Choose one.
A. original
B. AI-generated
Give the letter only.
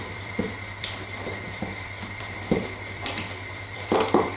B